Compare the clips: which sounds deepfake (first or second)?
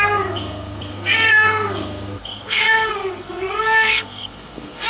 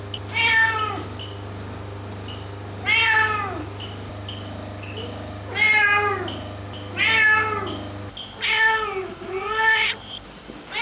first